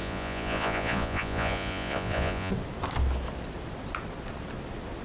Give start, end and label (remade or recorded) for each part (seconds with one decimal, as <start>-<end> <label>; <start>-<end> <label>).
0.0-2.5 remade; 2.5-5.0 recorded